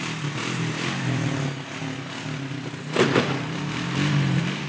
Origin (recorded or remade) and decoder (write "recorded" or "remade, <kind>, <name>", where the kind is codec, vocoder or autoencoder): recorded